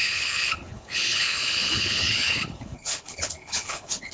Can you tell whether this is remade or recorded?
remade